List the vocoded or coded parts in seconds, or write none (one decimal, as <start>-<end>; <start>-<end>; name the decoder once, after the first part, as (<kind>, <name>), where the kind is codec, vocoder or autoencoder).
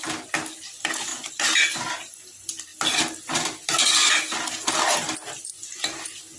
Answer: none